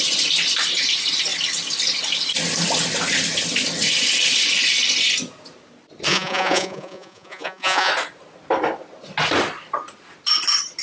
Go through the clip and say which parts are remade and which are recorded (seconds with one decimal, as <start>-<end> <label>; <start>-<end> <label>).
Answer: 0.0-6.1 recorded; 6.1-7.9 remade; 7.9-10.8 recorded